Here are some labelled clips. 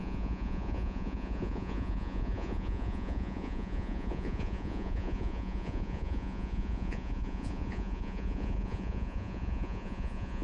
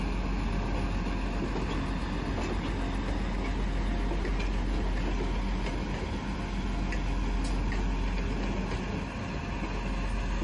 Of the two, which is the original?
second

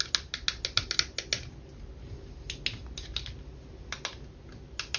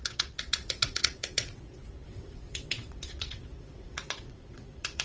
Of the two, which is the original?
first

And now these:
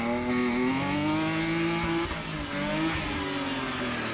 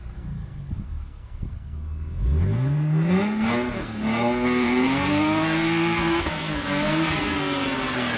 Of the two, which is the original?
first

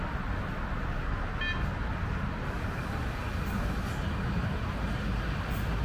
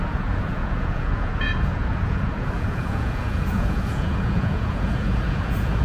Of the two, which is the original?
first